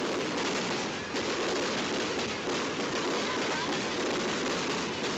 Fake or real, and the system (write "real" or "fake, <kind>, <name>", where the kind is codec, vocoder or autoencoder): real